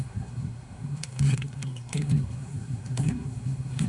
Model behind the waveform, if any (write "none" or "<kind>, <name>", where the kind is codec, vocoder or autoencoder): codec, SNAC